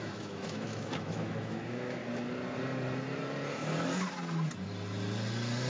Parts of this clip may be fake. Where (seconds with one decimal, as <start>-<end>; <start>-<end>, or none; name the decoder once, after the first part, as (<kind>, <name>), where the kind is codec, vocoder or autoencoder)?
0.0-2.0 (autoencoder, DAC-VAE)